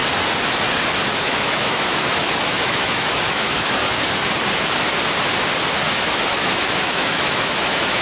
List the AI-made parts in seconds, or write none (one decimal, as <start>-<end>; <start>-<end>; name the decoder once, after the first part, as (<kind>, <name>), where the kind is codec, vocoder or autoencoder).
0.8-3.8 (autoencoder, DAC-VAE); 5.9-8.0